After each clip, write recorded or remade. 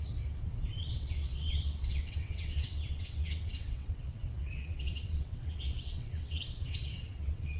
remade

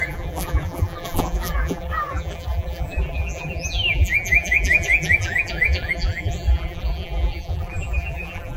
remade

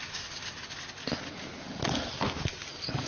recorded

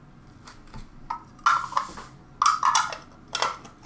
recorded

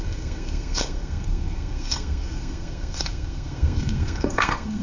remade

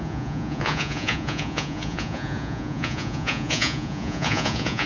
remade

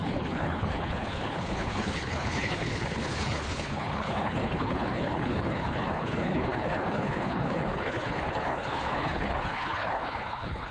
remade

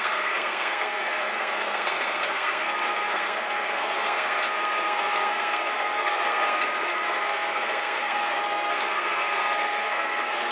remade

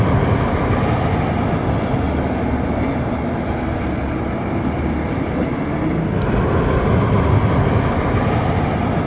recorded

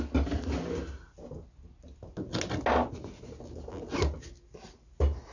recorded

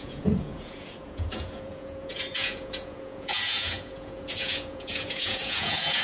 remade